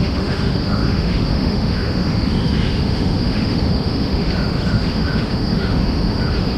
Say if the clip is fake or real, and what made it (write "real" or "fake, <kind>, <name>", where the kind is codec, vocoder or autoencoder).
fake, autoencoder, DAC-VAE